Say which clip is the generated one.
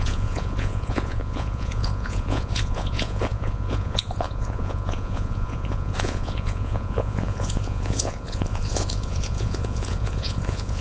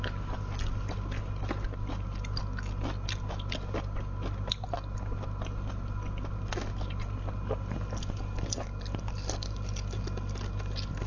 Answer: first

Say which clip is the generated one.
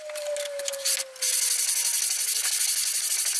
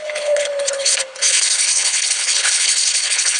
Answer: second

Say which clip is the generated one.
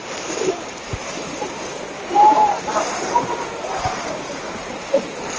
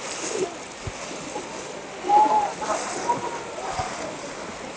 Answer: first